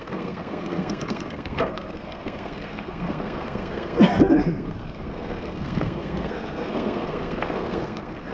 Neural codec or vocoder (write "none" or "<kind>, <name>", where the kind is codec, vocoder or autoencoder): codec, SNAC